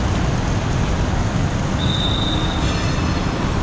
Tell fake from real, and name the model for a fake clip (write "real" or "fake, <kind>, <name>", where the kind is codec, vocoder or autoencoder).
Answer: real